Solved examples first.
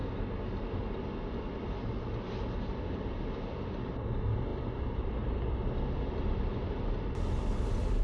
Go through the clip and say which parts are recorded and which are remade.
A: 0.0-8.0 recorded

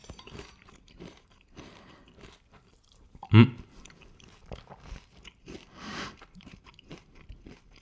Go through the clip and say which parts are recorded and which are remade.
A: 0.0-7.8 remade

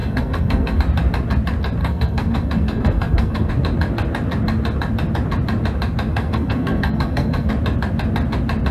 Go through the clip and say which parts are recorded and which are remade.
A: 0.0-0.8 remade; 0.8-1.8 recorded; 1.8-3.5 remade; 3.5-6.1 recorded; 6.1-7.5 remade; 7.5-8.7 recorded

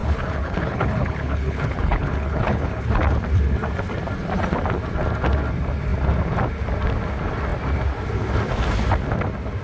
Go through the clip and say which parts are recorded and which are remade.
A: 0.0-2.9 remade; 2.9-9.6 recorded

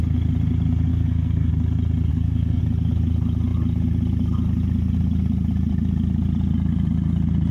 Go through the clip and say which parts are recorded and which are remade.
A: 0.0-0.9 recorded; 0.9-1.5 remade; 1.5-2.1 recorded; 2.1-2.6 remade; 2.6-7.5 recorded